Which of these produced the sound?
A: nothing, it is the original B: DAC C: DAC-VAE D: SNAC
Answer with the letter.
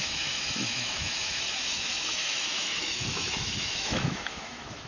C